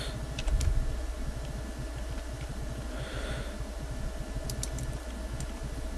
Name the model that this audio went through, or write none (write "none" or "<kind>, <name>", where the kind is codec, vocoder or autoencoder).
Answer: none